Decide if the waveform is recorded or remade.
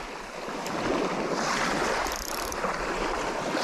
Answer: recorded